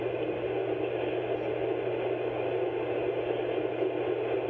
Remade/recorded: recorded